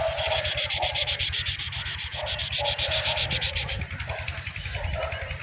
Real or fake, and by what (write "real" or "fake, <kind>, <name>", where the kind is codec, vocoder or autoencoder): real